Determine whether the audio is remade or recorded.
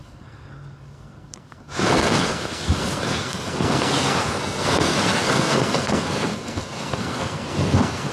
remade